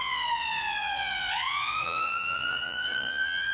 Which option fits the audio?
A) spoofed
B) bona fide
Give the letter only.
A